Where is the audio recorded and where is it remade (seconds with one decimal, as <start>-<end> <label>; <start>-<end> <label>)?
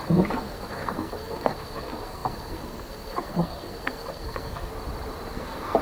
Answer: 0.0-4.7 remade; 4.7-5.3 recorded; 5.3-5.8 remade